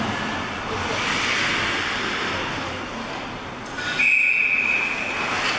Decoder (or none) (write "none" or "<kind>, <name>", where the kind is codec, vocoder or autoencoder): none